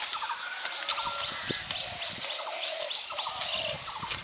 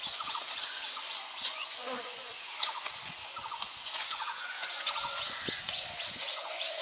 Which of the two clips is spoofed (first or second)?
second